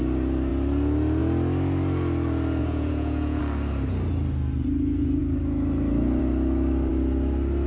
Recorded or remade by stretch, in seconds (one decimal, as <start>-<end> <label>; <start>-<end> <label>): 0.0-2.6 recorded; 2.6-3.4 remade; 3.4-7.7 recorded